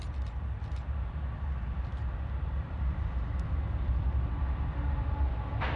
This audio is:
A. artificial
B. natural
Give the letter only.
B